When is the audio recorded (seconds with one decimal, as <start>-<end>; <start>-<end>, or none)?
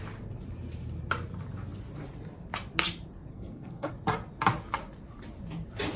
0.0-3.3; 3.9-6.0